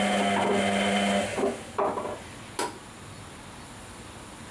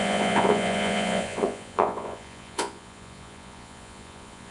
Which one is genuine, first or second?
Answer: first